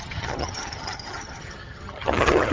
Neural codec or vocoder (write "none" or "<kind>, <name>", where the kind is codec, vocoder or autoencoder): vocoder, HiFi-GAN